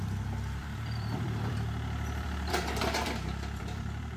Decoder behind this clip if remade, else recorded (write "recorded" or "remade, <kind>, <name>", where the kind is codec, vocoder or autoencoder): remade, vocoder, BigVGAN v2